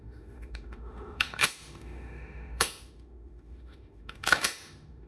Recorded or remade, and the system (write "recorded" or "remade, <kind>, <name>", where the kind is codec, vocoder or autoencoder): remade, autoencoder, DAC-VAE